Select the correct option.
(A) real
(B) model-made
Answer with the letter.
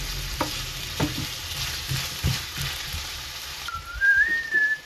B